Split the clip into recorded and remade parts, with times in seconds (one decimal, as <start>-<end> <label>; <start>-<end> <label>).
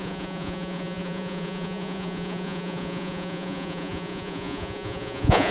0.0-5.5 remade